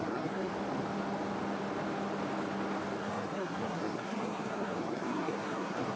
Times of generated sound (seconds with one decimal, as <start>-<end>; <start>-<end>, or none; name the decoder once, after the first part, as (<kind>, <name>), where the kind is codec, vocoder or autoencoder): 0.0-0.5 (codec, SNAC); 3.0-6.0

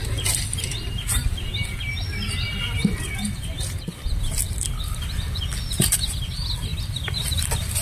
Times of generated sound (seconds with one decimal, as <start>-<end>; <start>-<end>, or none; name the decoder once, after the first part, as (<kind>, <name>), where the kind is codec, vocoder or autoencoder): none

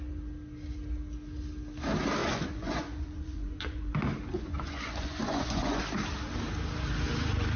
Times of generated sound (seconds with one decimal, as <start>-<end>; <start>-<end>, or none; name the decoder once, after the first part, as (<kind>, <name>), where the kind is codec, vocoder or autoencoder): 2.2-3.9 (vocoder, Vocos); 4.3-5.8

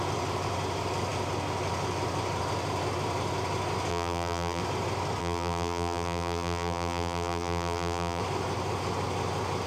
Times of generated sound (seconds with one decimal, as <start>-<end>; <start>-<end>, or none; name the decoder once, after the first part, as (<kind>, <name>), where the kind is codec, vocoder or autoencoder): 3.9-4.6 (vocoder, BigVGAN v2); 5.2-8.2

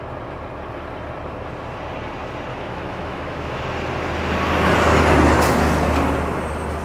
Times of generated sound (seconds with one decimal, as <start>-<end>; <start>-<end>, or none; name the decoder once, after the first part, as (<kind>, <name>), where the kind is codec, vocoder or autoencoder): 2.5-3.6 (autoencoder, DAC-VAE)

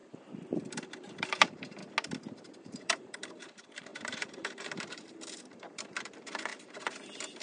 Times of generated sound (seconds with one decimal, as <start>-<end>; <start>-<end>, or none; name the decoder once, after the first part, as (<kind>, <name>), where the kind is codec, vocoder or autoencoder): 0.0-1.8 (vocoder, BigVGAN v2); 2.5-7.4

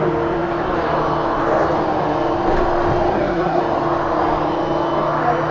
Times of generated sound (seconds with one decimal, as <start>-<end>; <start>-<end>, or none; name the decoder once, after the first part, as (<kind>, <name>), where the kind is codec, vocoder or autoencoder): 3.1-3.6 (codec, SNAC)

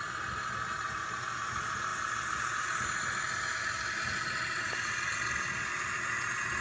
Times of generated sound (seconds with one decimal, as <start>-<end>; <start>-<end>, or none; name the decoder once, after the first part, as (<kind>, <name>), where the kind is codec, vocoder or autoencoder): none